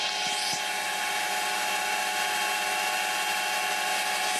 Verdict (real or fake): real